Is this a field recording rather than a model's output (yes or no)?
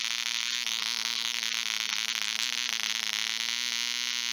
yes